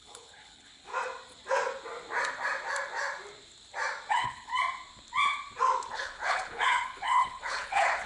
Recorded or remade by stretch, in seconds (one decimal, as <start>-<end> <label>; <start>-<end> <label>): 0.0-0.9 remade; 0.9-4.1 recorded; 4.1-4.5 remade; 4.5-5.9 recorded; 5.9-8.1 remade